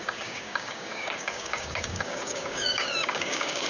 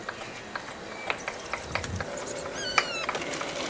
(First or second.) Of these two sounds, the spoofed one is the first